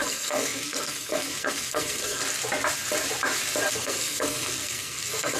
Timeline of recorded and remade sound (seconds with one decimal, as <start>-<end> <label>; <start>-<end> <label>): 0.0-2.2 remade; 2.2-3.7 recorded; 3.7-5.4 remade